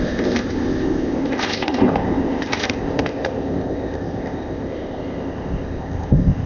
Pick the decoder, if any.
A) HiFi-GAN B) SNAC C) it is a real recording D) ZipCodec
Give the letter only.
D